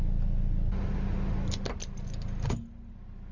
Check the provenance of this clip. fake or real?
real